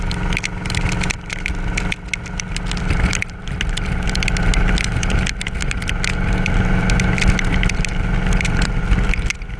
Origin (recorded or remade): recorded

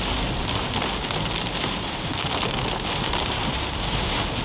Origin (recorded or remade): recorded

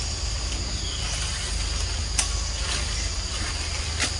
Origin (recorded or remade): recorded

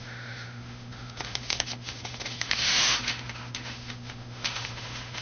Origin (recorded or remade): remade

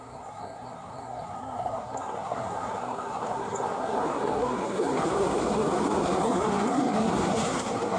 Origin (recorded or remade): remade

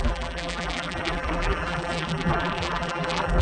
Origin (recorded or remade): remade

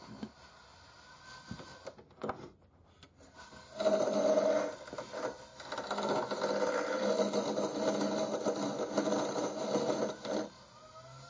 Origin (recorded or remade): recorded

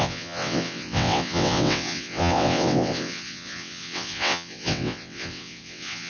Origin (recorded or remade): remade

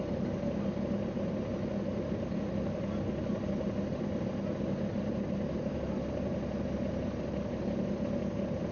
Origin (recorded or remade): recorded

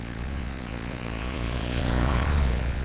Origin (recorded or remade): remade